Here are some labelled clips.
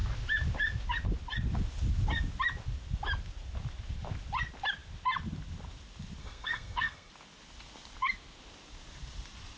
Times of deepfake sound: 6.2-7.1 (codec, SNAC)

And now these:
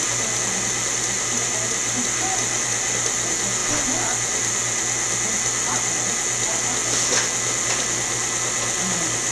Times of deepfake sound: none

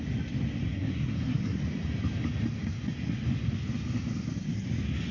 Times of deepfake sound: 0.7-1.6 (codec, SNAC)

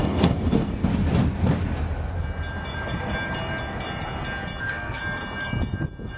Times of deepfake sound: 0.0-0.9 (codec, SNAC); 4.6-5.0

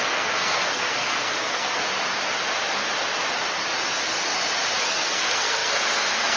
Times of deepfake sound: 0.0-1.8 (codec, SNAC); 4.8-6.4

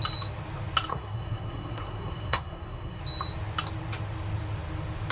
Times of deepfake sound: 0.9-3.0 (codec, SNAC)

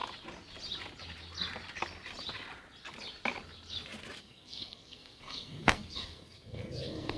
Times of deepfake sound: 4.2-7.2 (codec, SNAC)

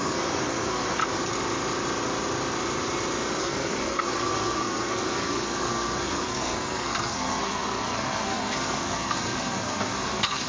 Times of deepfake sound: 0.0-1.0 (codec, SNAC); 3.4-10.5